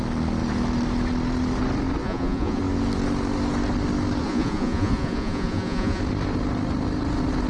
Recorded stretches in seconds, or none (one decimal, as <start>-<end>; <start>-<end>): 0.0-2.0; 2.6-4.2; 6.0-7.5